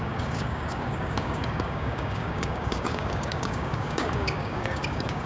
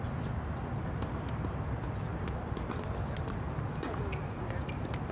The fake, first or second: first